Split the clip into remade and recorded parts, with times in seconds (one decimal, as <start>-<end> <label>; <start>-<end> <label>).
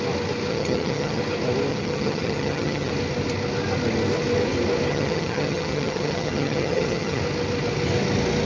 0.0-0.5 recorded; 0.5-1.2 remade; 1.2-1.7 recorded; 1.7-2.9 remade; 2.9-4.9 recorded; 4.9-7.2 remade; 7.2-8.5 recorded